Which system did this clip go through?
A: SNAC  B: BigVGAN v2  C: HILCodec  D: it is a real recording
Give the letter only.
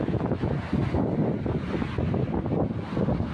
D